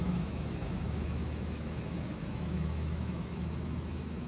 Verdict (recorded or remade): remade